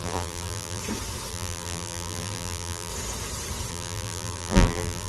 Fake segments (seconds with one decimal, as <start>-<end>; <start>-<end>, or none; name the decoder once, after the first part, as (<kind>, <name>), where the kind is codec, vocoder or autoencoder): 0.0-0.8 (vocoder, BigVGAN v2); 1.3-2.9; 3.7-5.1